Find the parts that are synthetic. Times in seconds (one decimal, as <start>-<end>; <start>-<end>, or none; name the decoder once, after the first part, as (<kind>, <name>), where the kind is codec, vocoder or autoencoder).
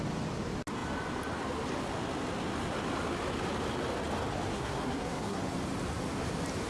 4.5-5.4 (codec, SNAC)